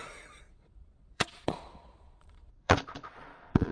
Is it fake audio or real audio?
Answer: fake